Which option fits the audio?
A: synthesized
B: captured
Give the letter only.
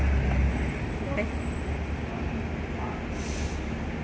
B